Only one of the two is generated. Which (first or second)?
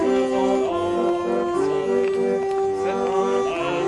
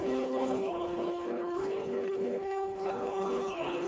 second